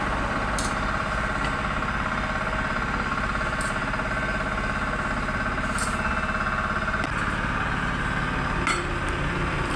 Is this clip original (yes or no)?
yes